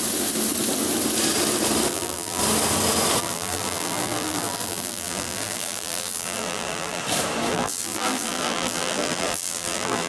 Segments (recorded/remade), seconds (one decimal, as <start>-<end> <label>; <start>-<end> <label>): 0.0-1.9 recorded; 1.9-2.4 remade; 2.4-3.2 recorded; 3.2-7.0 remade; 7.0-7.5 recorded; 7.5-10.1 remade